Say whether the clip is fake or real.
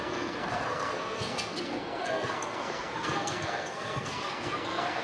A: fake